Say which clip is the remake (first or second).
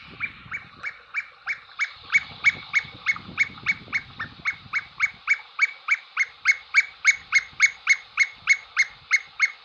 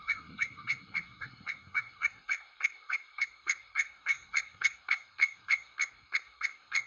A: second